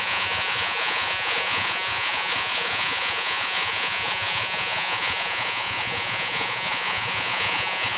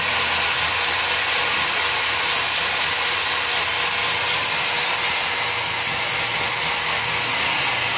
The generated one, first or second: first